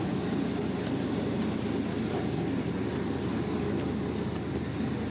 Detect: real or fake real